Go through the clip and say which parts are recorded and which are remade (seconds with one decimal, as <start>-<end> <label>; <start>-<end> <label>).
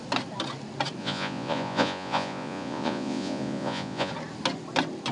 0.0-1.0 recorded; 1.0-4.1 remade; 4.1-5.1 recorded